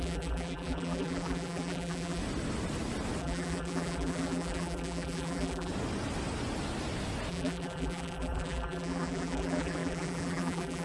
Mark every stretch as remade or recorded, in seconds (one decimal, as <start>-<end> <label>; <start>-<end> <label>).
0.0-2.2 remade; 2.2-3.2 recorded; 3.2-5.7 remade; 5.7-7.3 recorded; 7.3-10.8 remade